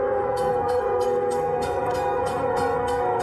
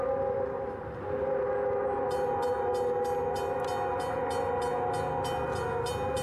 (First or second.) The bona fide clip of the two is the second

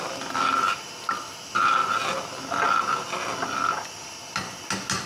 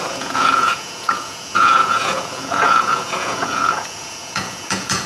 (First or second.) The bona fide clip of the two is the first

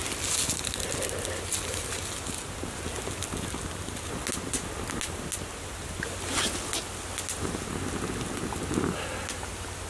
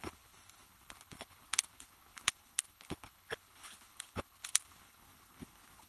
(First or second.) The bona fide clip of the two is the first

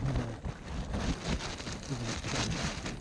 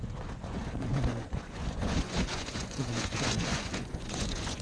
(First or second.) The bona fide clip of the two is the first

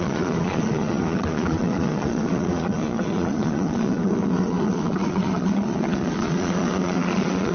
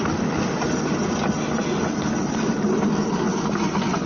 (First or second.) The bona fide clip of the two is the second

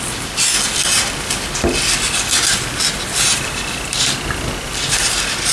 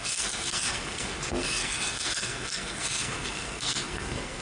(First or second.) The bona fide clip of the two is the first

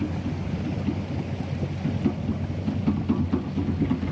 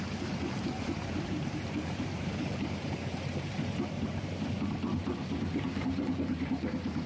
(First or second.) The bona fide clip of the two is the first